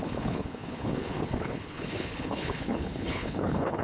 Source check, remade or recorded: remade